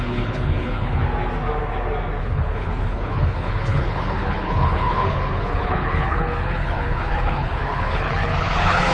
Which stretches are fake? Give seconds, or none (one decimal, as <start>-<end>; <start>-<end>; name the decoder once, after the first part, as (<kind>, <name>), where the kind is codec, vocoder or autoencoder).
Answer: 0.0-1.0 (codec, HILCodec); 2.2-8.9